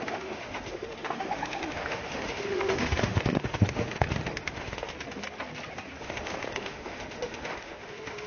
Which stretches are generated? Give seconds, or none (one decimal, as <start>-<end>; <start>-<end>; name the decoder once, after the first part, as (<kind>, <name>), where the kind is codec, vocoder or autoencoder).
0.0-4.9 (autoencoder, DAC-VAE); 6.0-8.3